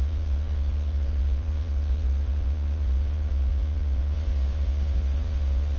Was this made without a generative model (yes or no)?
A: no